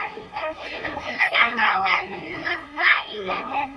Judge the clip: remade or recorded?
remade